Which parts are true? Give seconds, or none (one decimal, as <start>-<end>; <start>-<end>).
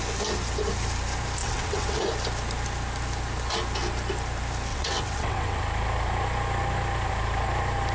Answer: 0.0-1.4; 2.0-4.7; 5.6-7.9